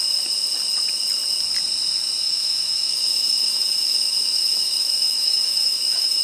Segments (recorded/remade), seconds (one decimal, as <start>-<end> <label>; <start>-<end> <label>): 0.0-2.2 recorded; 2.2-6.2 remade